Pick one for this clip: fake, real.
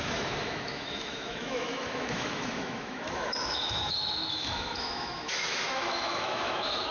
fake